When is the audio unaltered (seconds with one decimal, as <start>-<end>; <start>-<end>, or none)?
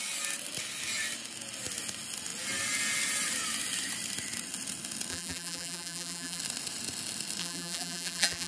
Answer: 0.0-5.1; 6.4-7.4